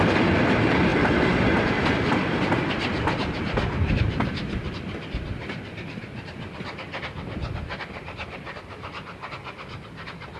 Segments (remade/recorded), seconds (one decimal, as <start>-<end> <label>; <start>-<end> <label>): 0.0-10.4 remade